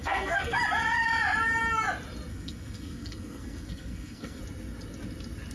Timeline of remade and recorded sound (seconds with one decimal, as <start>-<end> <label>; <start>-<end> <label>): 0.0-0.6 remade; 0.6-2.3 recorded; 2.3-4.4 remade; 4.4-5.5 recorded